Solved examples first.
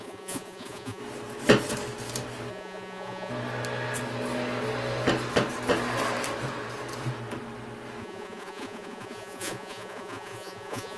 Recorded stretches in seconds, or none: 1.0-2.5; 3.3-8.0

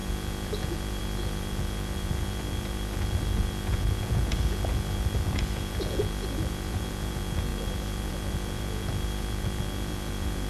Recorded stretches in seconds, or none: none

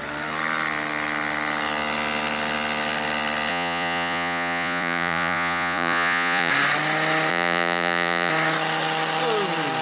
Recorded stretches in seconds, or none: 0.0-3.5; 6.5-7.3; 8.3-9.8

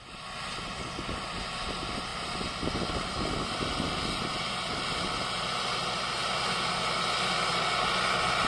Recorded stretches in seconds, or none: 0.0-8.5